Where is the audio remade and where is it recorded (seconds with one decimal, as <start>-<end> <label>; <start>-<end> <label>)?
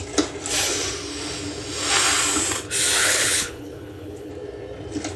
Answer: 0.0-3.0 recorded; 3.0-4.3 remade; 4.3-5.2 recorded